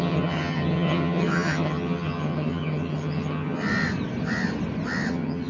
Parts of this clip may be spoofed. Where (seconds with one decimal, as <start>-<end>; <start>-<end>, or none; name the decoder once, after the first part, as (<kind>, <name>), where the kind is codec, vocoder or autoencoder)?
0.0-3.6 (vocoder, HiFi-GAN); 5.1-5.5